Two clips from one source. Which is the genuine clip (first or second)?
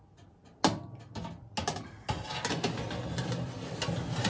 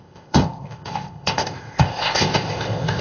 first